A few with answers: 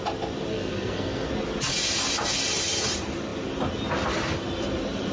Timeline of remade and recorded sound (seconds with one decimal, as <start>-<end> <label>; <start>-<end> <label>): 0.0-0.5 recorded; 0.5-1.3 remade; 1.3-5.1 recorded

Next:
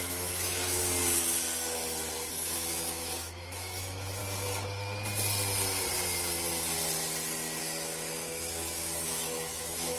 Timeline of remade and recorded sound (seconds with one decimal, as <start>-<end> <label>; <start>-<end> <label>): 0.0-0.8 remade; 0.8-2.3 recorded; 2.3-4.2 remade; 4.2-7.6 recorded; 7.6-10.0 remade

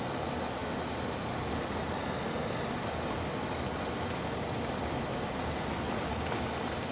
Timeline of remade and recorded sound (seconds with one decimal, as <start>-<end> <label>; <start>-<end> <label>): 0.0-6.9 recorded

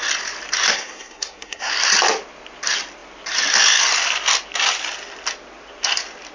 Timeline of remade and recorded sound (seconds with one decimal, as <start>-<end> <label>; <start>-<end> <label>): 0.0-0.7 recorded; 0.7-1.7 remade; 1.7-6.3 recorded